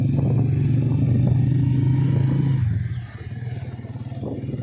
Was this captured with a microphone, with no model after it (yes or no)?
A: yes